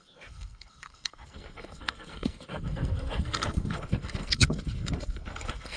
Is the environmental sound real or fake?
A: fake